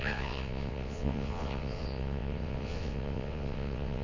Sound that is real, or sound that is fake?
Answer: fake